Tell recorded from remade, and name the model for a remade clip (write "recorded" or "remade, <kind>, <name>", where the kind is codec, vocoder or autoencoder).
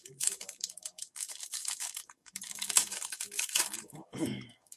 remade, codec, DAC